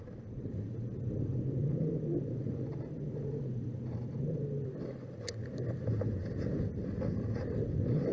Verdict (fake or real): real